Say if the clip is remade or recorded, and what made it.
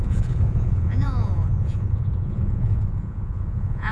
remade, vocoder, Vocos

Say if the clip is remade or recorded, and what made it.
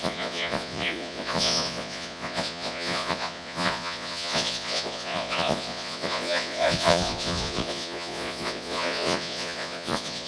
remade, vocoder, Vocos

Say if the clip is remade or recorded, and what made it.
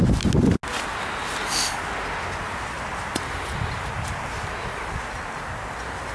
recorded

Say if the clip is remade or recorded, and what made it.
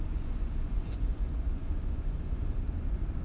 remade, vocoder, Vocos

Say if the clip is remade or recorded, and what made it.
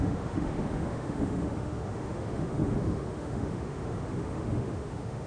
remade, autoencoder, DAC-VAE